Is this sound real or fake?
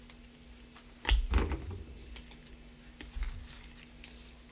real